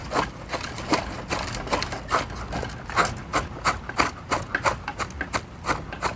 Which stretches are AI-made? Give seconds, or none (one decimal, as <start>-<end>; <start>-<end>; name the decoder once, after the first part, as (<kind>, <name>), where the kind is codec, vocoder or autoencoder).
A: none